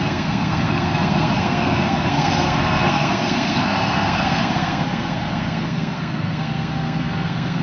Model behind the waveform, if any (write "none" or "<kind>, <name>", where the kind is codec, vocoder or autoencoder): codec, SNAC